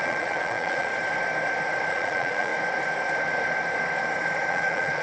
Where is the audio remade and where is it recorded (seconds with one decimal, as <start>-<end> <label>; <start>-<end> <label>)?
0.0-0.9 remade; 0.9-1.9 recorded; 1.9-2.5 remade; 2.5-4.5 recorded; 4.5-5.0 remade